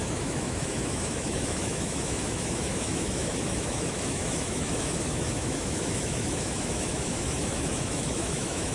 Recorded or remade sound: remade